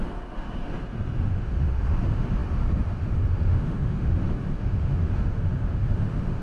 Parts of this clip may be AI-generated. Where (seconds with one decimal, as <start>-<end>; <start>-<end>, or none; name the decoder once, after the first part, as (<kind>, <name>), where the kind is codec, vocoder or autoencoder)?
0.0-0.7 (autoencoder, DAC-VAE); 1.2-6.4